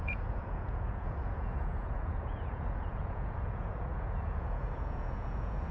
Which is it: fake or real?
fake